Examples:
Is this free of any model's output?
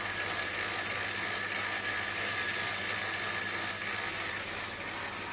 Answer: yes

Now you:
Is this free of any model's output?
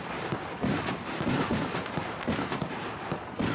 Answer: yes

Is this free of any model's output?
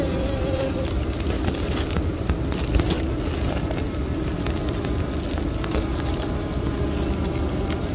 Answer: yes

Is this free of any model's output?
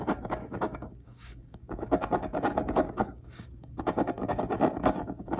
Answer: no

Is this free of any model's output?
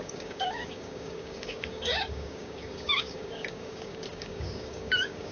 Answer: no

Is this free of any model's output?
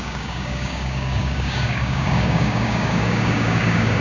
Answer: no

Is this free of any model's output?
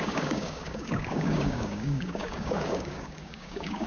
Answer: no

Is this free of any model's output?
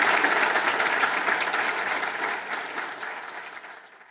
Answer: yes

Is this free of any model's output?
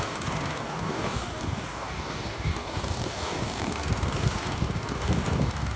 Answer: no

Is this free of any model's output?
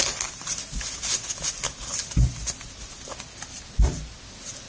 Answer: yes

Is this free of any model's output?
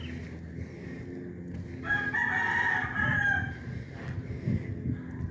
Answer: yes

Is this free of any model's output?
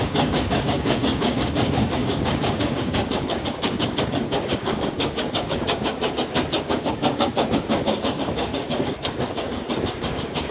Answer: no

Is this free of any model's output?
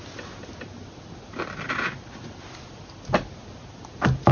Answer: yes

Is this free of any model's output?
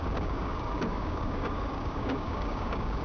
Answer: no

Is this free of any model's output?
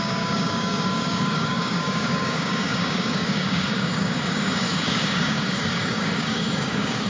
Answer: no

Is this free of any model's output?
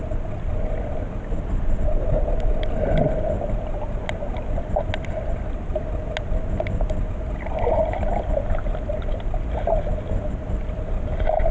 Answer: yes